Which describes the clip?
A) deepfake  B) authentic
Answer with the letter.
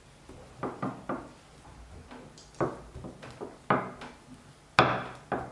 B